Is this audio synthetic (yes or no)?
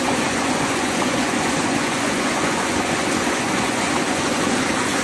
yes